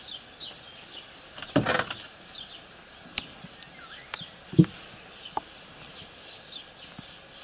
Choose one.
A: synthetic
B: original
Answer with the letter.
B